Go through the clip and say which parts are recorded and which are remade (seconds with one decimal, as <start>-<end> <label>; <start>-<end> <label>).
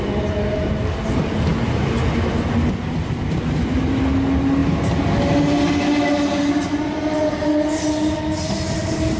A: 0.0-9.2 recorded